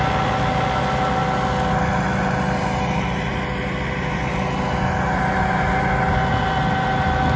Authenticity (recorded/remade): recorded